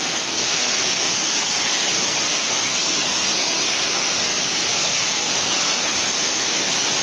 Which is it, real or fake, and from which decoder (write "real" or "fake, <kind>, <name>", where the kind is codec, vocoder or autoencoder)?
fake, codec, SNAC